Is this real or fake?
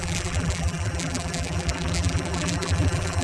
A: fake